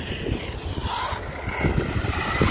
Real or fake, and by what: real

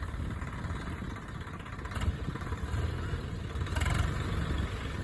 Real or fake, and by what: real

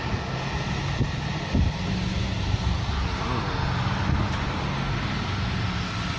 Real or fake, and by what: real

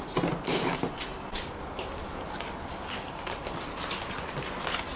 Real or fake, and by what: real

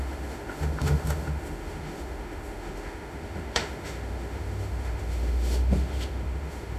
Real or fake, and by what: fake, autoencoder, DAC-VAE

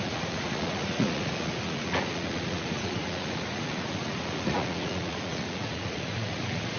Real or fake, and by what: fake, vocoder, Vocos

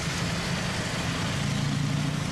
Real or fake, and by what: real